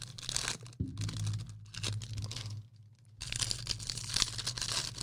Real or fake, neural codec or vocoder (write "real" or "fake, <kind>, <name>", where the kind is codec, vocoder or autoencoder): real